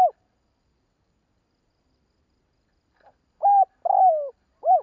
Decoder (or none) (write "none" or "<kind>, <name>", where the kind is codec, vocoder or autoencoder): none